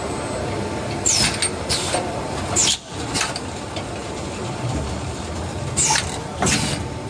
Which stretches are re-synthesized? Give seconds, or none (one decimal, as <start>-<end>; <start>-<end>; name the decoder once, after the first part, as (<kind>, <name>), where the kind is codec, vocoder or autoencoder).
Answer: 2.6-3.1 (vocoder, BigVGAN v2); 4.0-5.3